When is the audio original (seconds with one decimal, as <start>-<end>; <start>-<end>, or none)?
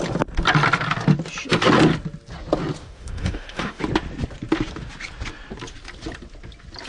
0.0-2.8; 3.8-6.9